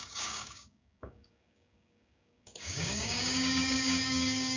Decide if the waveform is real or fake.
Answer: fake